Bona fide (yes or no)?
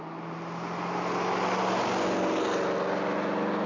yes